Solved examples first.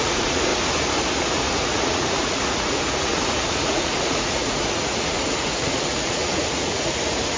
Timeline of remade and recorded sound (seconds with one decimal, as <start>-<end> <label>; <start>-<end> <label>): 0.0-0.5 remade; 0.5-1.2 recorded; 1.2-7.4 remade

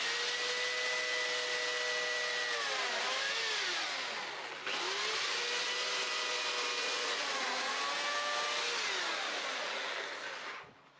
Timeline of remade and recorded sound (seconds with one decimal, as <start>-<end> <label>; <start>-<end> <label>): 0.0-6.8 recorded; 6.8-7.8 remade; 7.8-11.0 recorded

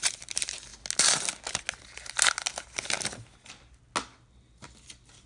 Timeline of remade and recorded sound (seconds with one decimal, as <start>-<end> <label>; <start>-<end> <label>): 0.0-5.3 recorded